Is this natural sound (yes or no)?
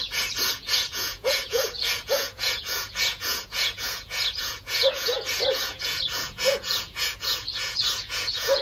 no